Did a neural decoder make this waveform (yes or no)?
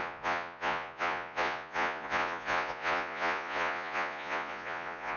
yes